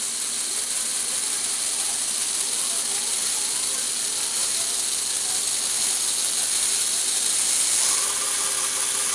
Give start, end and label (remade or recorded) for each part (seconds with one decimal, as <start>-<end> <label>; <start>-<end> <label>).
0.0-9.1 recorded